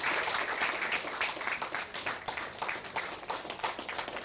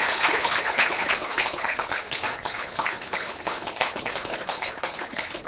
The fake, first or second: second